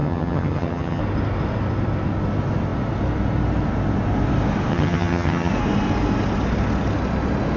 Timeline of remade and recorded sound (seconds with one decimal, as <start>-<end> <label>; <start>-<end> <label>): 0.0-1.0 remade; 1.0-4.7 recorded; 4.7-5.5 remade; 5.5-7.6 recorded